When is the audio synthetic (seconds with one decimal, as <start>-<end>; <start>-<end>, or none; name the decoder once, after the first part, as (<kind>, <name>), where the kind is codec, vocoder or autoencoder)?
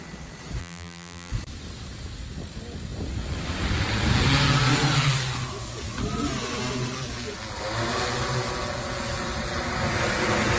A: 0.6-1.3 (vocoder, BigVGAN v2)